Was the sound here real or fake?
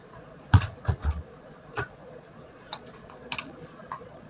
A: fake